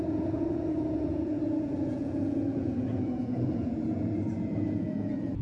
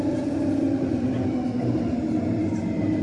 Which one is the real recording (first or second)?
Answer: second